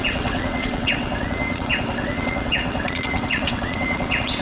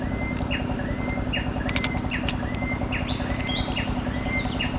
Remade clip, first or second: first